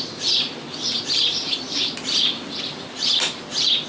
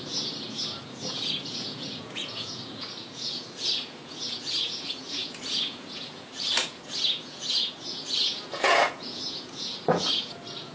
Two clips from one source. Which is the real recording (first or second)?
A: first